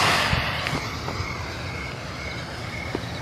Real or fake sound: real